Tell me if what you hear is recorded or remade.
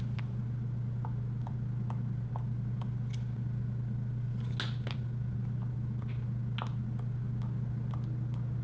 recorded